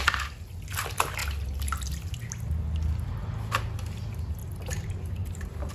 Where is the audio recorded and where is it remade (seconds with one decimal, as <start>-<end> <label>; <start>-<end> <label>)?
0.0-4.4 recorded; 4.4-5.7 remade

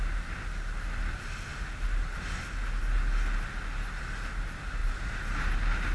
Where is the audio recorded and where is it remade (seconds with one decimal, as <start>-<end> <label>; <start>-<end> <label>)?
0.0-4.8 recorded; 4.8-5.5 remade; 5.5-5.9 recorded

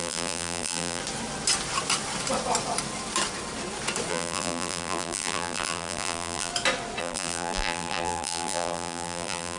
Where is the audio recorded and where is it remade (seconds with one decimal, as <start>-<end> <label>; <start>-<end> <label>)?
0.0-1.0 remade; 1.0-4.1 recorded; 4.1-6.5 remade; 6.5-7.0 recorded; 7.0-9.6 remade

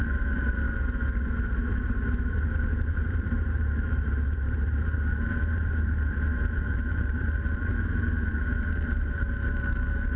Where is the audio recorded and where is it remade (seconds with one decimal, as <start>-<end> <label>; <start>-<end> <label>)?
0.0-10.2 remade

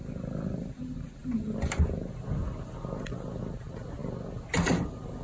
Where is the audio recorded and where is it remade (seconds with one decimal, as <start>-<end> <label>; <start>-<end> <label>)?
0.0-5.2 recorded

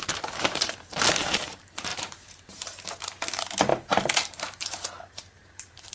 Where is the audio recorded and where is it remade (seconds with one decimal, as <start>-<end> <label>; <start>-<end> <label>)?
0.0-5.9 remade

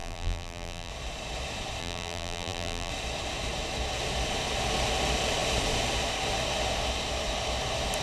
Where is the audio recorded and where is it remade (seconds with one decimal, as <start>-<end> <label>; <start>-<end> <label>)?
0.0-0.9 remade; 0.9-1.8 recorded; 1.8-2.9 remade; 2.9-8.0 recorded